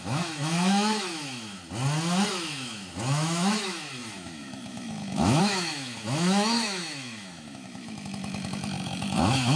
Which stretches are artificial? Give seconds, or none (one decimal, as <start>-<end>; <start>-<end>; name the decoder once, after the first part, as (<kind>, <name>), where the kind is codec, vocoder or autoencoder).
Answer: 0.0-1.6 (autoencoder, DAC-VAE); 2.3-9.6